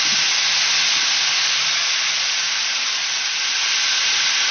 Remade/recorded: recorded